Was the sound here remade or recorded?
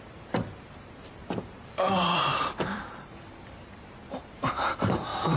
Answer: remade